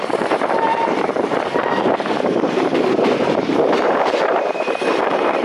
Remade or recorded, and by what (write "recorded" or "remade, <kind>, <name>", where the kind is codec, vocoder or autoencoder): remade, vocoder, BigVGAN v2